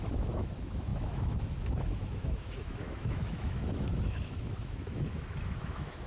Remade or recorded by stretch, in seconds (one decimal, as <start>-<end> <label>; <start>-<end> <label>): 0.0-6.1 remade